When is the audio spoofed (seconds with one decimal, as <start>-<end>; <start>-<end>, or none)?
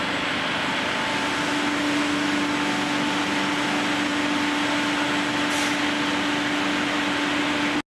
none